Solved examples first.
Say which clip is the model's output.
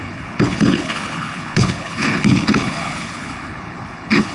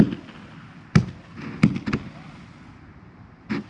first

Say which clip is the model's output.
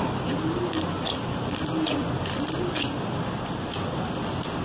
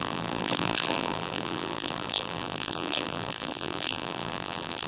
second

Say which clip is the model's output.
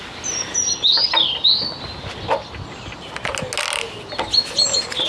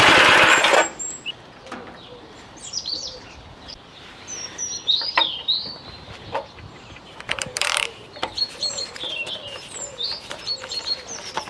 second